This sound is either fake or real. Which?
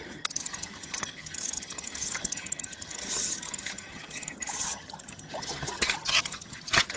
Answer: fake